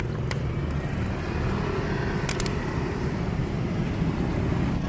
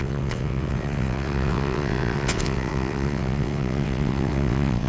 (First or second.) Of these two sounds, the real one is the first